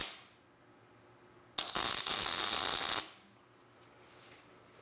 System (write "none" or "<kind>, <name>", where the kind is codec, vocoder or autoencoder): none